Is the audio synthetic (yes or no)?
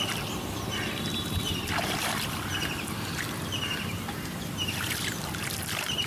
yes